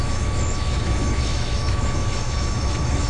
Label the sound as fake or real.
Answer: fake